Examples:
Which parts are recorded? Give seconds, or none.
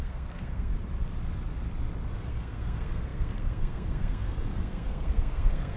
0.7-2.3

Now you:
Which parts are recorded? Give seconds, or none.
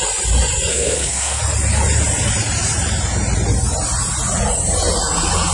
0.0-0.7; 1.4-5.5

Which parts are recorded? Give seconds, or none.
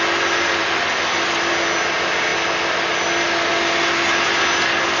0.0-5.0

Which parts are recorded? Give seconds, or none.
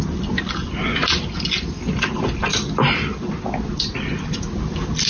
0.0-5.1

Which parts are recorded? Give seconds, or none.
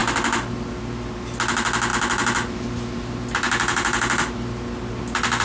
0.0-5.4